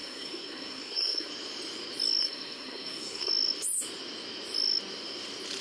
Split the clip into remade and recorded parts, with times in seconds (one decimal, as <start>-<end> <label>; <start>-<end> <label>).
0.0-1.3 remade; 1.3-2.2 recorded; 2.2-3.3 remade; 3.3-5.6 recorded